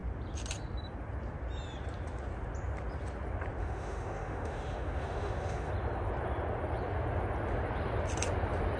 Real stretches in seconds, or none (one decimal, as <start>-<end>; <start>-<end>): 0.0-3.6; 5.7-8.8